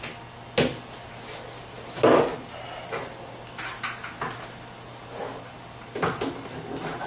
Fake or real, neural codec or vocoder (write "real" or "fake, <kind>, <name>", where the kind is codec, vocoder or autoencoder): real